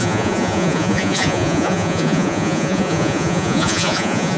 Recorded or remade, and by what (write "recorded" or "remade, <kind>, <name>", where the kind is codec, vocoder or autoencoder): remade, vocoder, Vocos